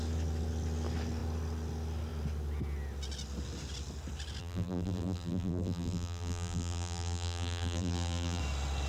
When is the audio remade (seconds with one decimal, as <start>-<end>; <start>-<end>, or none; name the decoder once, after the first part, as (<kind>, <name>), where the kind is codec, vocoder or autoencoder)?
4.4-8.4 (vocoder, BigVGAN v2)

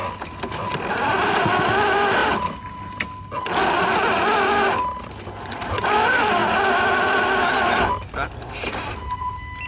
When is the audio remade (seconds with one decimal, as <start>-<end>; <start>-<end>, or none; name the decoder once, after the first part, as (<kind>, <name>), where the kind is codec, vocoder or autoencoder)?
0.0-0.9 (vocoder, BigVGAN v2); 6.4-8.1

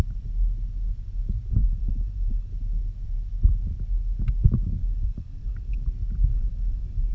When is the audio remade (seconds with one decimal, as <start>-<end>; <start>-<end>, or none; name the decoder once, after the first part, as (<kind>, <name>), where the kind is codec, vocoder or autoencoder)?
1.6-2.5 (vocoder, BigVGAN v2); 4.8-5.8; 6.3-7.1

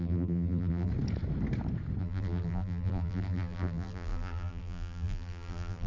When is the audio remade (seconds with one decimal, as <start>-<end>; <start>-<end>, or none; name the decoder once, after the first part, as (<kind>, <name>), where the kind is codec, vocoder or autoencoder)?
0.0-0.9 (vocoder, BigVGAN v2); 2.0-5.9

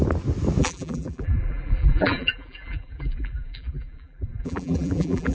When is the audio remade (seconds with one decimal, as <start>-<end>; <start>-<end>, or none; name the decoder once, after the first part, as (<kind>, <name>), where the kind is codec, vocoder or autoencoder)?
0.6-5.3 (vocoder, BigVGAN v2)

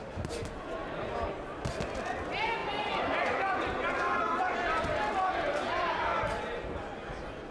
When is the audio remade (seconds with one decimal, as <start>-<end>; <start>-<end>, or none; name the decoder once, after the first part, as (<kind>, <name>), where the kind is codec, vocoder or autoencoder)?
2.6-3.6 (vocoder, BigVGAN v2); 4.4-6.8

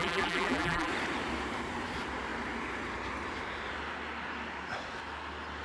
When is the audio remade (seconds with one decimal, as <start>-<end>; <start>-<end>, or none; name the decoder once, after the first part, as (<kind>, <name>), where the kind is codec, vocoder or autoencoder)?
0.0-0.9 (vocoder, BigVGAN v2)